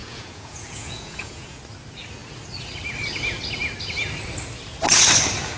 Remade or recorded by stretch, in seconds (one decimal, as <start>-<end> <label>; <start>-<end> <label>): 0.0-1.6 remade; 1.6-5.6 recorded